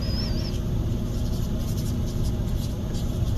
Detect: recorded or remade recorded